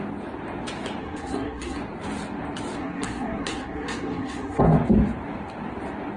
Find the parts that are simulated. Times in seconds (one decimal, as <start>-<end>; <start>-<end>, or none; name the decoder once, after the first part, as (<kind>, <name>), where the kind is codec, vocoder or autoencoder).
1.0-1.8 (codec, SNAC); 2.8-4.6

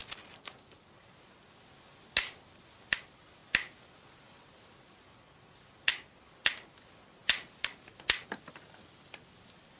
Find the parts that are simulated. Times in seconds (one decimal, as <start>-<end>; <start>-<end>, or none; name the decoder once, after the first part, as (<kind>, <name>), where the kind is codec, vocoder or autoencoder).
none

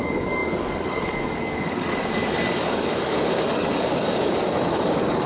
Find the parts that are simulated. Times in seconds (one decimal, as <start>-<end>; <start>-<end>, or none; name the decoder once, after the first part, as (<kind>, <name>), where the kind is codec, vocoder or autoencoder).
0.0-5.3 (codec, DAC)

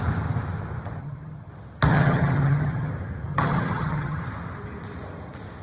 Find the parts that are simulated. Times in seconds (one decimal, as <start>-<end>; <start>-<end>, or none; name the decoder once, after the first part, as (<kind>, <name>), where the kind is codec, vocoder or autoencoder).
1.0-1.5 (vocoder, HiFi-GAN); 1.9-2.9; 3.3-4.2

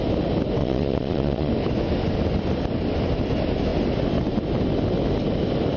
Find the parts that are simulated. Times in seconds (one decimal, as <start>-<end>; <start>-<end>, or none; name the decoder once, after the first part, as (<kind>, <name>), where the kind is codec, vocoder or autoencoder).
0.6-1.5 (vocoder, Vocos)